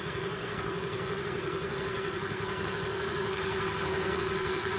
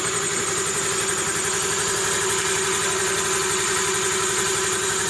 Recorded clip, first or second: second